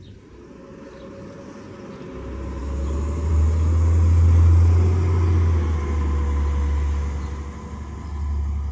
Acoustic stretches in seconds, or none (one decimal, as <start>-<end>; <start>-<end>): 0.0-8.7